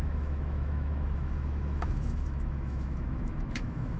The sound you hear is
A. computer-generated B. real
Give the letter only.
A